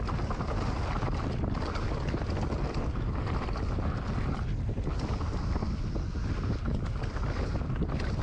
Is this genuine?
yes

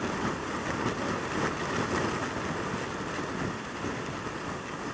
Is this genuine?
yes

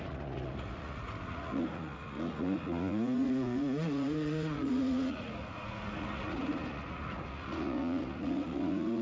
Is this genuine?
no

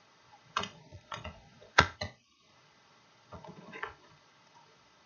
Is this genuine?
no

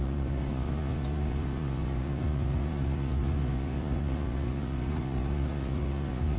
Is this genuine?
no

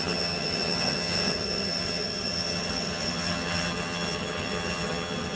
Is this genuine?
no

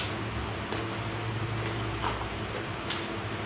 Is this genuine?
yes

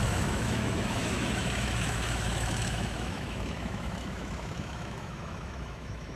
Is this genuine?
no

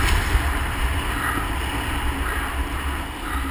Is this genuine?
yes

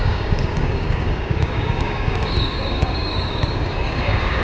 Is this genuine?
no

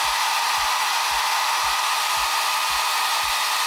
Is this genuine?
yes